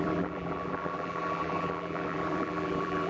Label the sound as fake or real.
fake